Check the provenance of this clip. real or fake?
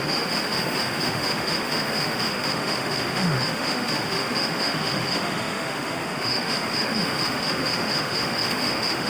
fake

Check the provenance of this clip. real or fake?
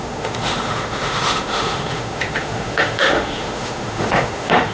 fake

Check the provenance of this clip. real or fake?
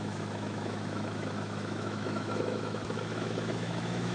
fake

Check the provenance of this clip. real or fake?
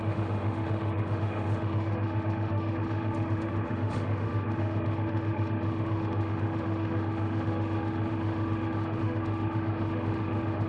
fake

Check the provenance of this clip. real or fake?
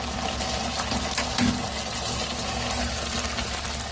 real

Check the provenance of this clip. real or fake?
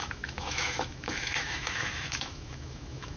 fake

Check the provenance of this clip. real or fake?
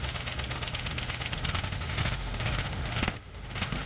fake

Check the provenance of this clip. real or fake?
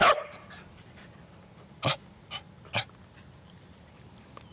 real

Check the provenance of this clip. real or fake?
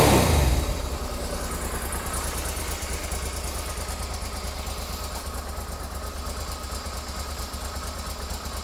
real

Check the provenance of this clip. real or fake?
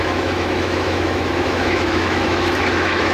fake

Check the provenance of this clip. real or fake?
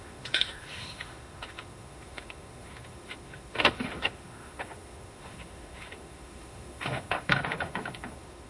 fake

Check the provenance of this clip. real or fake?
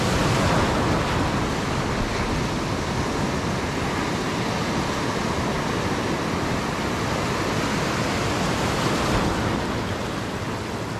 real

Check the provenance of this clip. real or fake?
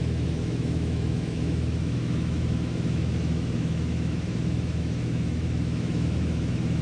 fake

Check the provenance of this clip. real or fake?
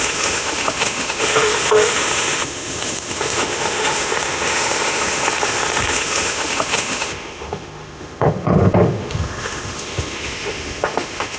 fake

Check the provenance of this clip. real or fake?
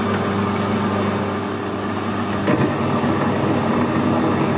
real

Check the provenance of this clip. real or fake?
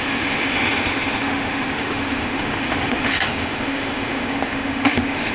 fake